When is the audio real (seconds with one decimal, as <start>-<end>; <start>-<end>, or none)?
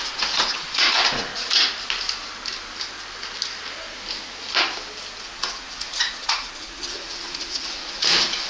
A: 1.3-5.2